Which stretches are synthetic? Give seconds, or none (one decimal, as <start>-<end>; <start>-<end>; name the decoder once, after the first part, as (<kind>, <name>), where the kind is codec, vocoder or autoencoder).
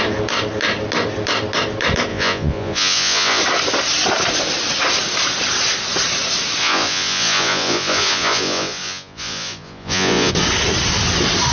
2.1-3.4 (vocoder, Vocos); 6.6-10.3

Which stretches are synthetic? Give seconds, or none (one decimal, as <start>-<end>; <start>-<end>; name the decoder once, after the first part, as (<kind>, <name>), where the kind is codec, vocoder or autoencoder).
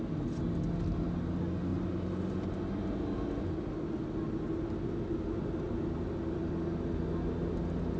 none